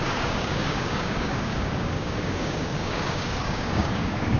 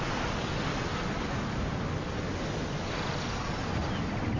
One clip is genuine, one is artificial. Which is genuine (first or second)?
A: second